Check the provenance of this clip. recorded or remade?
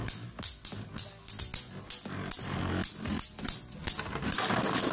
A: recorded